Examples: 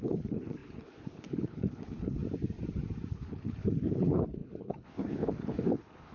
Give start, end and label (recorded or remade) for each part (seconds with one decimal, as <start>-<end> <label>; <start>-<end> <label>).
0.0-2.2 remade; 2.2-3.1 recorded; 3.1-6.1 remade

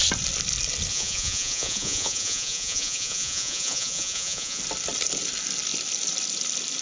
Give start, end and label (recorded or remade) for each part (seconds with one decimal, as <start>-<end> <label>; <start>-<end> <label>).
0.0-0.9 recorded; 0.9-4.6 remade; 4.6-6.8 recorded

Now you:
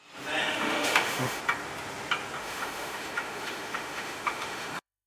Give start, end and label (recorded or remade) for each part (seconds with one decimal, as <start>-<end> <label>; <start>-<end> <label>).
0.0-0.4 recorded; 0.4-1.4 remade; 1.4-2.4 recorded; 2.4-5.1 remade

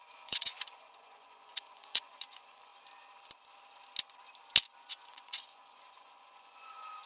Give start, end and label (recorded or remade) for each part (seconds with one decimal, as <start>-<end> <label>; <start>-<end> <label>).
0.0-2.7 remade; 2.7-4.9 recorded; 4.9-7.1 remade

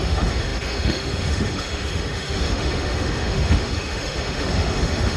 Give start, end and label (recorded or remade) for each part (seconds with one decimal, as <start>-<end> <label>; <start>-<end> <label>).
0.0-5.2 remade